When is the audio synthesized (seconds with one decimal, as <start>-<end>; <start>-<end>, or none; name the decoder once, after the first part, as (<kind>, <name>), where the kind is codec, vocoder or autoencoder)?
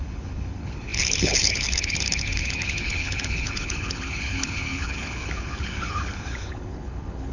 0.0-7.3 (codec, HILCodec)